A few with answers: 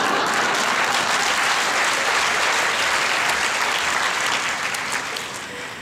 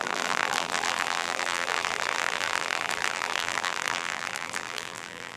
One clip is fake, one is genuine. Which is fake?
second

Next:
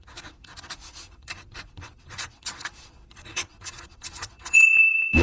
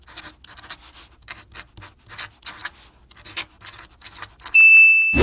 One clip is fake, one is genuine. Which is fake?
first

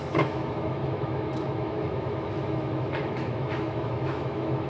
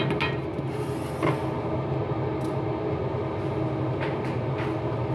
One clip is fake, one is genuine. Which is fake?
first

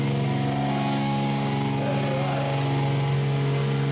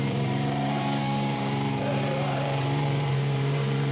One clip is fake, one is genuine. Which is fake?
second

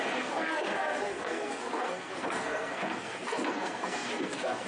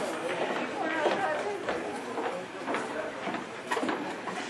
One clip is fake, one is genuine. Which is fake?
first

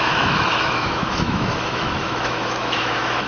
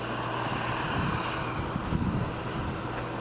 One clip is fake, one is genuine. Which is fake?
first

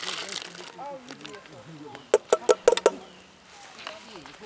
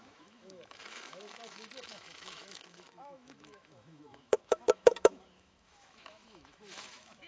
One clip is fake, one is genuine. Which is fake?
second